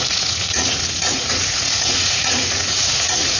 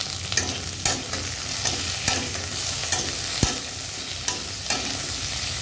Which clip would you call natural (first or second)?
second